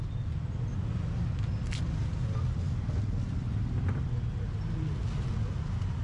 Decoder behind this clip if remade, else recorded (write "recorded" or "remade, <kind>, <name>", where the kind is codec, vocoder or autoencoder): recorded